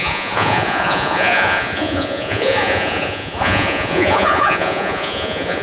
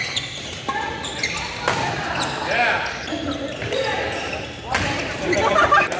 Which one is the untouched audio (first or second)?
second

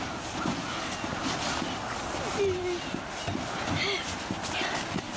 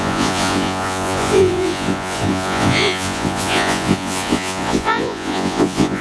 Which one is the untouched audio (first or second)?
first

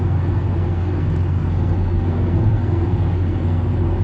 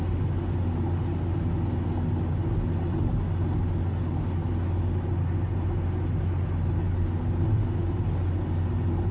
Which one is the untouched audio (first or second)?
second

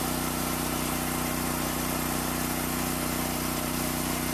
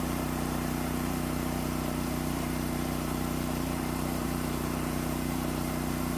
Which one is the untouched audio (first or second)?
first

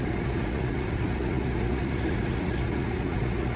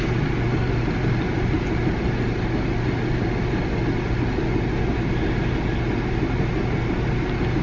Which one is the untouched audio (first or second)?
second